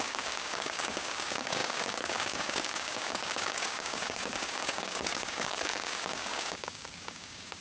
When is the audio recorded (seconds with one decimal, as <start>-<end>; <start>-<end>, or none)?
none